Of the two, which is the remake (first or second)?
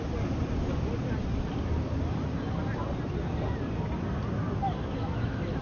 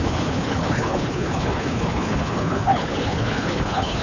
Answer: second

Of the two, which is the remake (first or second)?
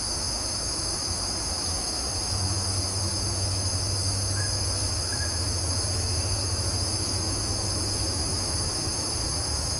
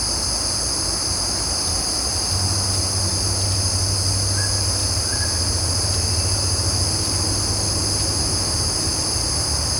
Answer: first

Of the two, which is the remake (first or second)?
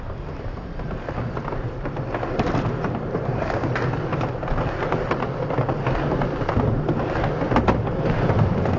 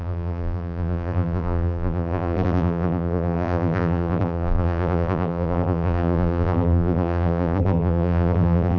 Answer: second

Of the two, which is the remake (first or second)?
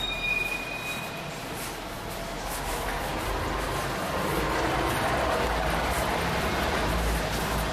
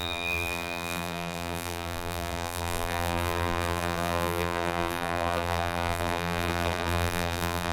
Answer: second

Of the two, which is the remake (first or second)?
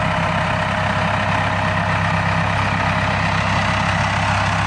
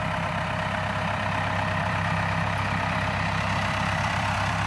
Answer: second